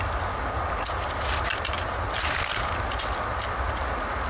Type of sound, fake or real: real